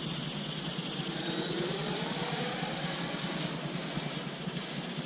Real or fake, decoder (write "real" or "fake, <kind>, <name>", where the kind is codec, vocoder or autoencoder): real